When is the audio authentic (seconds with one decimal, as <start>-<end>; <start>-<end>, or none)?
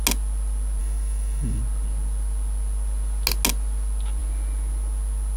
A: 0.0-0.8; 1.6-5.4